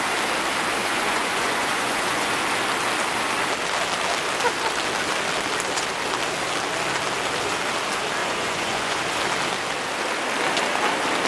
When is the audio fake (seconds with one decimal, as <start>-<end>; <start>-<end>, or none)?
0.8-2.3; 8.2-9.0